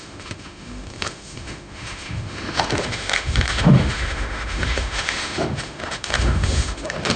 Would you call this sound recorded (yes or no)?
no